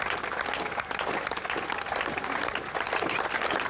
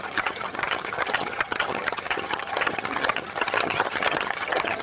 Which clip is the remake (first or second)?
second